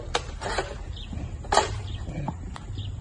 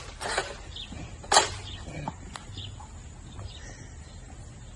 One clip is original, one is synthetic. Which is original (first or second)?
second